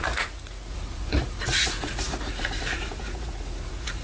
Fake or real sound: fake